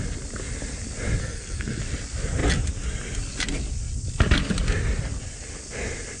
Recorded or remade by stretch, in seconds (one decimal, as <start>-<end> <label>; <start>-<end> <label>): 0.0-1.2 recorded; 1.2-1.8 remade; 1.8-6.2 recorded